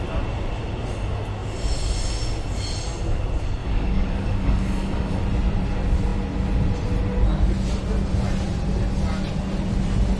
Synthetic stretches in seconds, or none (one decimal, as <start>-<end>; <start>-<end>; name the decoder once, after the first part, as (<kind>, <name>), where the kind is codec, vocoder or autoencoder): 3.6-5.2 (codec, DAC)